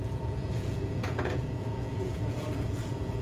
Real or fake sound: fake